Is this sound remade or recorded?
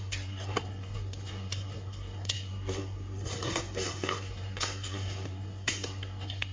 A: remade